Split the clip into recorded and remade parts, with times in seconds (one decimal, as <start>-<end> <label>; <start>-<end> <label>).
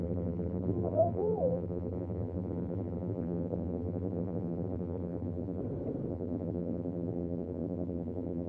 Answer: 0.0-5.6 remade; 5.6-6.1 recorded; 6.1-8.5 remade